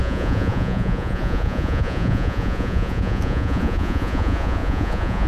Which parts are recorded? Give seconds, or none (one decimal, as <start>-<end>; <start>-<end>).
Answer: none